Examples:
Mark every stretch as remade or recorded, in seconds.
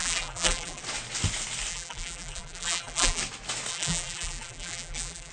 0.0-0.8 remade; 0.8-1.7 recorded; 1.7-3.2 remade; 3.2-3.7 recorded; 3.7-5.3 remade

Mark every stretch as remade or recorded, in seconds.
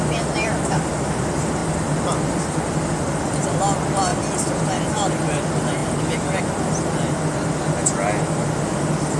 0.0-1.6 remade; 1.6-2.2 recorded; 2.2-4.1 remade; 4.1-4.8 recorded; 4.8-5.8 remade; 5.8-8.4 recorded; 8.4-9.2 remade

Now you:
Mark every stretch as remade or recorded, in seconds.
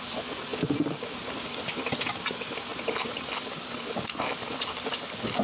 0.0-2.7 recorded; 2.7-3.3 remade; 3.3-5.4 recorded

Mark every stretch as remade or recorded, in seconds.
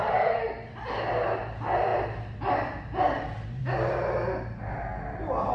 0.0-5.5 recorded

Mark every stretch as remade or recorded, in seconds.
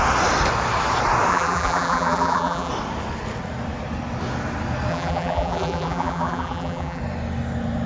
0.0-1.3 recorded; 1.3-2.7 remade; 2.7-4.9 recorded; 4.9-7.0 remade; 7.0-7.9 recorded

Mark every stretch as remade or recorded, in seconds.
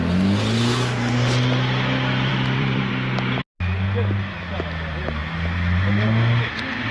0.0-2.3 recorded; 2.3-2.9 remade; 2.9-6.9 recorded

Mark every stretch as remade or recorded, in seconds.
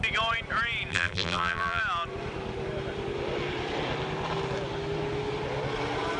0.0-0.9 recorded; 0.9-1.8 remade; 1.8-6.2 recorded